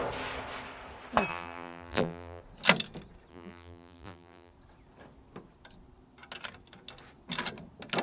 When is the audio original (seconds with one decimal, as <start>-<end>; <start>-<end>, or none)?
0.0-1.3; 2.4-3.3; 4.5-8.0